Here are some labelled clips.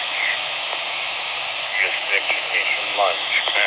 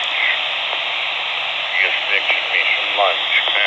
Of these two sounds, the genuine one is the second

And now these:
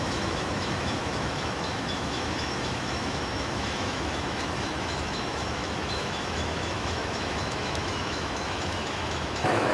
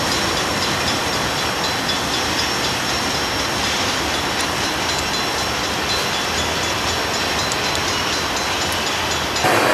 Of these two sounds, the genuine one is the second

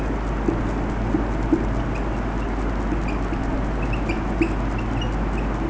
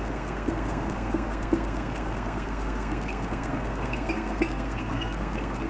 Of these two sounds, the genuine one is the first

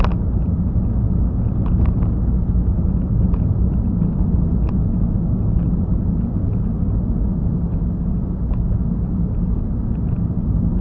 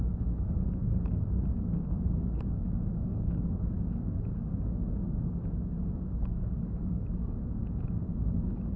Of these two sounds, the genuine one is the first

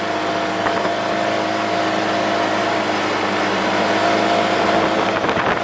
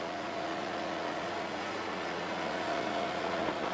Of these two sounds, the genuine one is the first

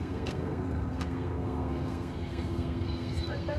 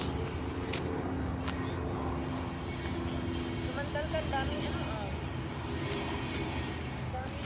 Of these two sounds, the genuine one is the second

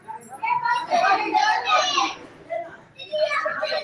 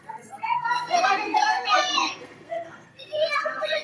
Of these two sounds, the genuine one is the first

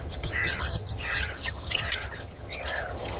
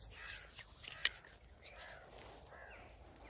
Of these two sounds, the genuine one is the second